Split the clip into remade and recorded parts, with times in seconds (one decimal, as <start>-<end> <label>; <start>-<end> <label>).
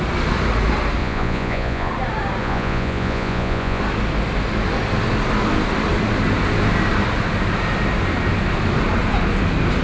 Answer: 0.0-1.0 recorded; 1.0-1.9 remade; 1.9-2.4 recorded; 2.4-3.8 remade; 3.8-9.8 recorded